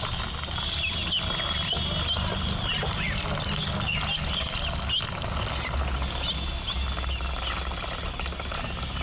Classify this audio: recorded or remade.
recorded